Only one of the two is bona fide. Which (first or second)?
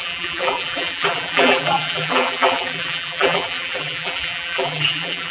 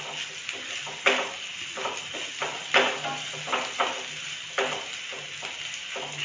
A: second